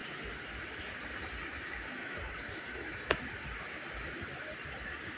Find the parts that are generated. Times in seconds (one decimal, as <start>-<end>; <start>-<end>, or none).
2.0-3.2